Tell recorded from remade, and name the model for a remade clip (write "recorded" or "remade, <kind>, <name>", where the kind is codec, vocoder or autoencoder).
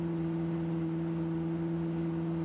recorded